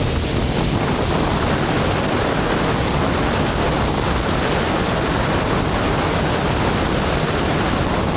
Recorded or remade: recorded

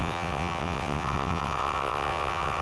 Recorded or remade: remade